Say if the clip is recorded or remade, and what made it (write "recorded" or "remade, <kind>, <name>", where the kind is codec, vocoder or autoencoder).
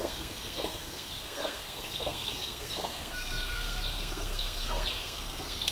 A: remade, codec, SNAC